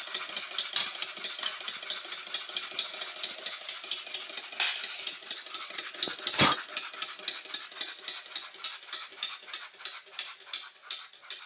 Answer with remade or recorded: recorded